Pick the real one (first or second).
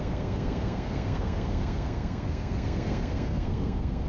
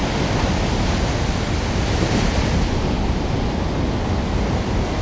second